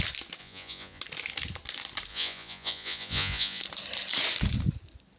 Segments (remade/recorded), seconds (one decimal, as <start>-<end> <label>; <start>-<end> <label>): 0.0-0.4 recorded; 0.4-1.0 remade; 1.0-2.1 recorded; 2.1-3.6 remade; 3.6-5.2 recorded